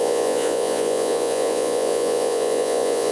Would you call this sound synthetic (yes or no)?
yes